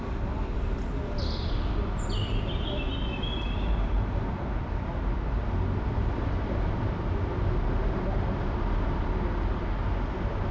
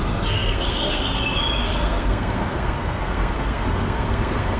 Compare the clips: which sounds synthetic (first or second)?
second